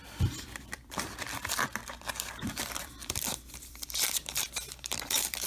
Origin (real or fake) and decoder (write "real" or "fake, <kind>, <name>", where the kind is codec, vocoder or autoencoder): fake, vocoder, BigVGAN v2